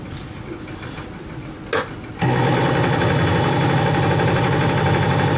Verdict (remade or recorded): recorded